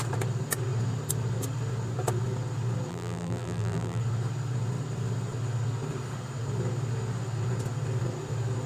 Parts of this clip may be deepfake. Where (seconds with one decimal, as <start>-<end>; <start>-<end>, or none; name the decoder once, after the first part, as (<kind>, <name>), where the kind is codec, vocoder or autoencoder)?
2.9-4.0 (vocoder, BigVGAN v2)